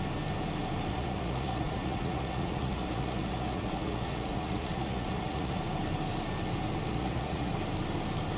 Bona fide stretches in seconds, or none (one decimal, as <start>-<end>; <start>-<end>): 0.0-0.9; 5.6-6.9; 7.5-8.4

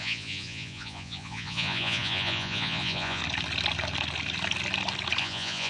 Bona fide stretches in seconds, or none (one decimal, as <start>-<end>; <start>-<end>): 3.2-5.2

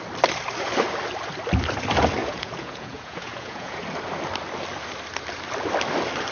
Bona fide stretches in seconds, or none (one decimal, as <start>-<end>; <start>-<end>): 0.0-2.2; 3.8-6.3